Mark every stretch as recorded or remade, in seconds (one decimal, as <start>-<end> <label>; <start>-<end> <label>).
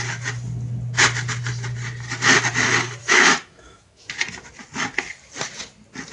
0.0-3.0 recorded; 3.0-4.1 remade; 4.1-6.1 recorded